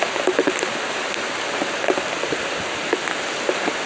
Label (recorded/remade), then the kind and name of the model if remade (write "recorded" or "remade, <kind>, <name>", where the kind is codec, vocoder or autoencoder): recorded